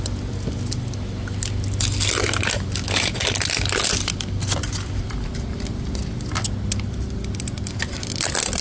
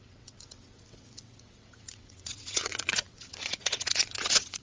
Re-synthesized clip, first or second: second